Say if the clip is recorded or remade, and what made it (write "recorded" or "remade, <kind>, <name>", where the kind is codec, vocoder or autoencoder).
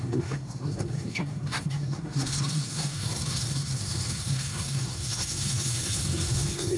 remade, codec, SNAC